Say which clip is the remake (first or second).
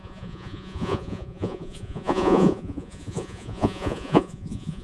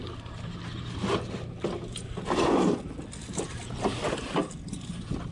first